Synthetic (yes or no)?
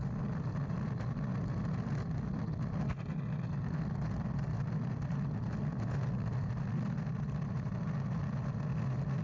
no